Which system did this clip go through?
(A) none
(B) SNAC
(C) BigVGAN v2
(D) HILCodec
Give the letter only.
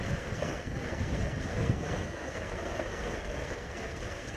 B